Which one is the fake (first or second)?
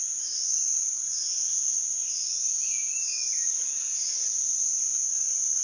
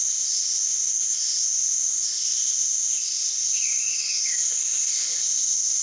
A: second